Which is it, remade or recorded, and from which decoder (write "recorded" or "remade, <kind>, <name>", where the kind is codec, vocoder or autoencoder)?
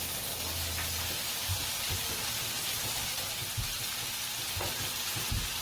recorded